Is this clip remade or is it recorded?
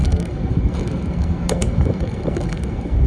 remade